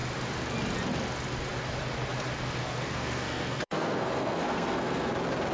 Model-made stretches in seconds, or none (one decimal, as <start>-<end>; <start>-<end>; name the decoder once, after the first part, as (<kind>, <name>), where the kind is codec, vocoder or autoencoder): 2.6-5.1 (codec, SNAC)